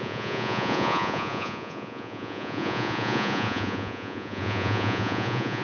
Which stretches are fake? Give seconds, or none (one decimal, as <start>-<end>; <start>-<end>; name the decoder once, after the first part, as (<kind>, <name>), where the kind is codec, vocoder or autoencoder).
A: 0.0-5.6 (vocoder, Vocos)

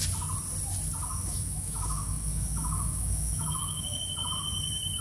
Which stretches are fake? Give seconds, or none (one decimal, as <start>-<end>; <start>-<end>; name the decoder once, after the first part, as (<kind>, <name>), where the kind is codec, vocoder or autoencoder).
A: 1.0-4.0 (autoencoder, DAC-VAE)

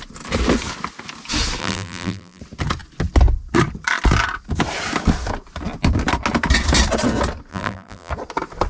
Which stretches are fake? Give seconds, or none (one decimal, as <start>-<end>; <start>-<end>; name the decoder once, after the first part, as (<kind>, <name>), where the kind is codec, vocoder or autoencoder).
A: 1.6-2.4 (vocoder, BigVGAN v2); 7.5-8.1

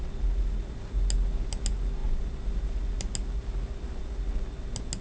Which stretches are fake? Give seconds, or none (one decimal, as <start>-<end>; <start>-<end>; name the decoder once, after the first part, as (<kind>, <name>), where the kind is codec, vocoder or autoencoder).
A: none

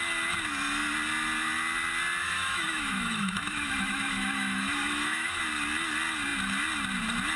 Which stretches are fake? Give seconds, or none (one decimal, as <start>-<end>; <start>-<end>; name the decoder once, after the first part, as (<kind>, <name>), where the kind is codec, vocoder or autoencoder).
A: 2.2-5.4 (autoencoder, DAC-VAE)